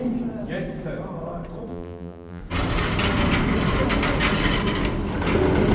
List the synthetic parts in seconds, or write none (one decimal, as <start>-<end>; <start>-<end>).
1.7-2.4